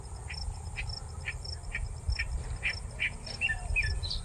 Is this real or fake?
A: real